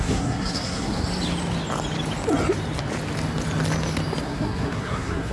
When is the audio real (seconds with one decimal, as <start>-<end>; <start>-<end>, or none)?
1.0-4.2